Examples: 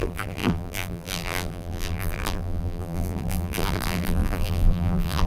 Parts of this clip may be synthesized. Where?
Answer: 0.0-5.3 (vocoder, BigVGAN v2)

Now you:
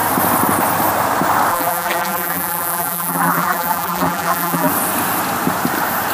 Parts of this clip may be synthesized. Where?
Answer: 1.5-4.7 (vocoder, BigVGAN v2)

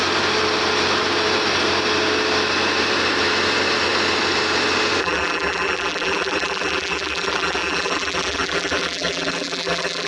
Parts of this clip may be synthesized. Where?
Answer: 5.0-10.1 (vocoder, BigVGAN v2)

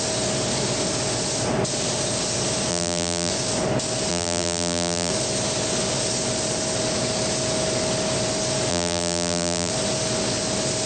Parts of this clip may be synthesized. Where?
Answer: 2.7-3.3 (vocoder, BigVGAN v2); 4.1-5.1; 8.7-9.7